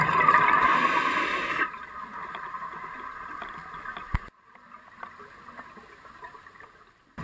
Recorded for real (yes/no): yes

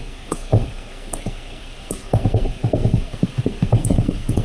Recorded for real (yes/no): no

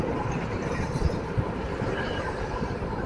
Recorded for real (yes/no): no